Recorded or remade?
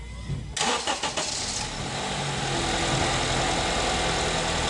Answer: recorded